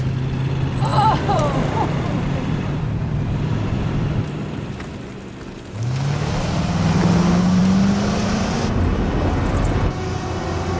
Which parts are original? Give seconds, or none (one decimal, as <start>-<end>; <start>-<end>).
0.0-0.9; 5.1-10.8